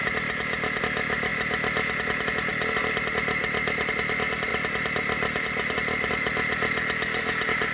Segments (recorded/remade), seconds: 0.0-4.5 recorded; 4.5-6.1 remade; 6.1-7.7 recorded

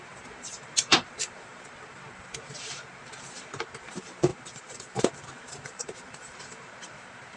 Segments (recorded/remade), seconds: 0.0-7.4 remade

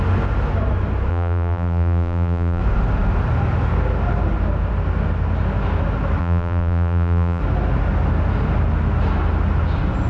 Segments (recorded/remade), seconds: 0.0-1.1 recorded; 1.1-2.6 remade; 2.6-6.2 recorded; 6.2-7.4 remade; 7.4-10.1 recorded

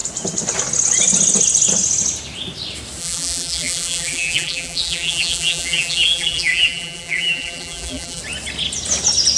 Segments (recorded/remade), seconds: 0.0-3.0 recorded; 3.0-8.2 remade; 8.2-9.4 recorded

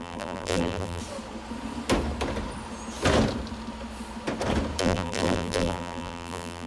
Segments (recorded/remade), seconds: 0.0-1.0 remade; 1.0-4.8 recorded; 4.8-6.7 remade

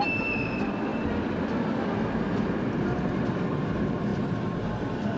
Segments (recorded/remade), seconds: 0.0-0.9 recorded; 0.9-3.3 remade; 3.3-5.2 recorded

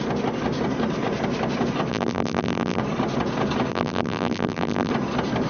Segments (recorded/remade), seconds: 0.0-1.9 recorded; 1.9-2.8 remade; 2.8-3.7 recorded; 3.7-4.9 remade; 4.9-5.5 recorded